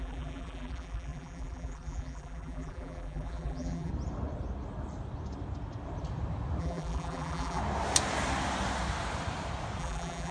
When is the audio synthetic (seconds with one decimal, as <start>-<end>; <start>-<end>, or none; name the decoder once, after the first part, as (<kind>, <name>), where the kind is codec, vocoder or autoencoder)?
0.0-3.9 (vocoder, BigVGAN v2); 6.6-7.6; 9.8-10.3